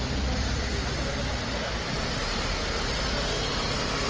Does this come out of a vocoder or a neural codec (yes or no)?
no